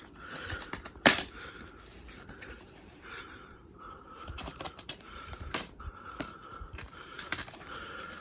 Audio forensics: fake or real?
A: fake